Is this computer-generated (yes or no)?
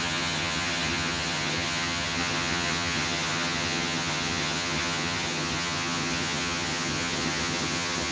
yes